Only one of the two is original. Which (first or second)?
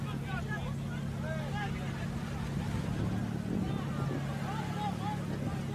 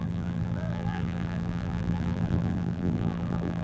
first